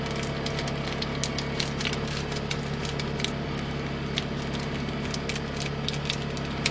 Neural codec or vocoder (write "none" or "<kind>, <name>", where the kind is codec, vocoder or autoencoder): none